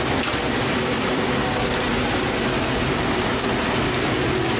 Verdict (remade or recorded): recorded